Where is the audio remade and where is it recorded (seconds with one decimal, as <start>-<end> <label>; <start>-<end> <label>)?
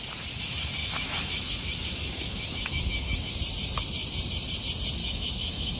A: 0.0-0.8 recorded; 0.8-3.3 remade; 3.3-5.0 recorded; 5.0-5.8 remade